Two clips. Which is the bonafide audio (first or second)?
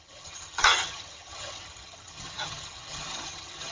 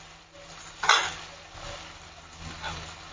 second